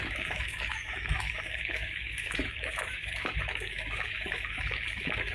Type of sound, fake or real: fake